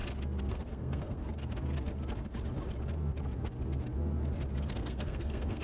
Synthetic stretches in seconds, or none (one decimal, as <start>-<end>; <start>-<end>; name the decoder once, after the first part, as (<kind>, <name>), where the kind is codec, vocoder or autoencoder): 0.5-1.2 (codec, SNAC); 4.6-5.6